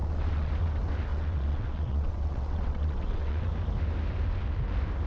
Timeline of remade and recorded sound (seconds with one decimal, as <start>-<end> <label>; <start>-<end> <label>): 0.0-0.5 remade; 0.5-1.1 recorded; 1.1-3.5 remade; 3.5-5.1 recorded